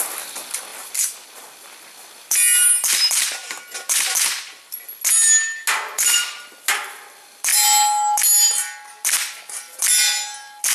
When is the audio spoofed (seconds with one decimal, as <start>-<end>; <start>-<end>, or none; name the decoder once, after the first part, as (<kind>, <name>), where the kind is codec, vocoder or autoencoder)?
none